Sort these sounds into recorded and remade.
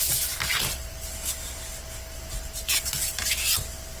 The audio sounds recorded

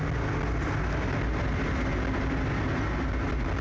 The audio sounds recorded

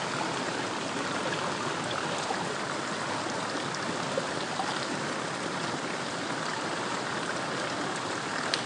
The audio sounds recorded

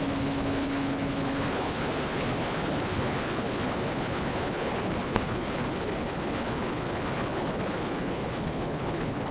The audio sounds remade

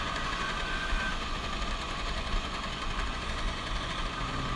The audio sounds remade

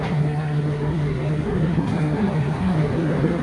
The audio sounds remade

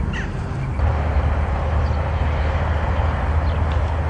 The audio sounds recorded